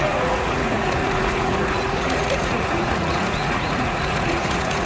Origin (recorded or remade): remade